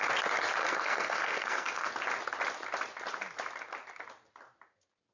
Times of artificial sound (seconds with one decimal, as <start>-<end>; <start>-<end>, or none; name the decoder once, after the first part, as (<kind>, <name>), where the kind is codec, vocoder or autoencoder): 0.6-1.9 (codec, SNAC)